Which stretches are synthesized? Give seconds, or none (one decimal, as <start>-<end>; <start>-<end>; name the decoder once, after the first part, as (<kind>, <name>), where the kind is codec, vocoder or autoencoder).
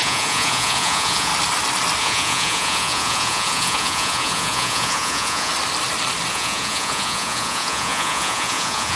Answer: 0.0-1.3 (vocoder, Vocos); 2.0-5.5; 6.3-9.0